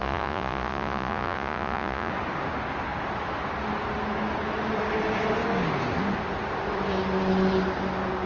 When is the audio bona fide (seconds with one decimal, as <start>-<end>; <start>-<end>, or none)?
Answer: 2.1-8.3

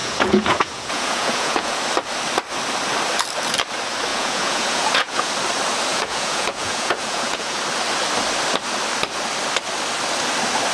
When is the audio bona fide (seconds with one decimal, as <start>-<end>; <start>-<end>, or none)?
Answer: 1.8-4.1; 5.3-5.9; 7.6-10.7

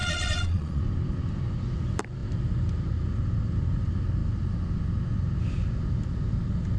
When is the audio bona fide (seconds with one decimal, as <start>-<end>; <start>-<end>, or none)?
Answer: 0.8-6.8

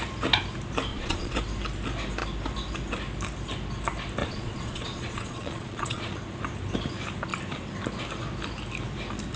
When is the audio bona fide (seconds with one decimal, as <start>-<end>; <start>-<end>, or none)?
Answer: 0.0-0.9; 1.4-4.2; 6.1-9.4

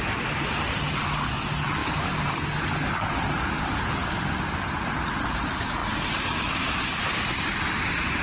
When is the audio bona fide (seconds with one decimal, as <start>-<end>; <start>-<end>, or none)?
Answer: 0.0-8.2